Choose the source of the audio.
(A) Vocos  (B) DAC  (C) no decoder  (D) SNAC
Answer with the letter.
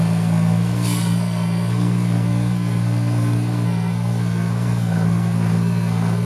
D